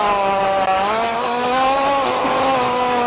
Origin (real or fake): real